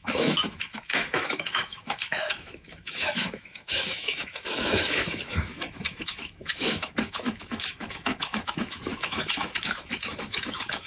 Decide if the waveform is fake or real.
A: fake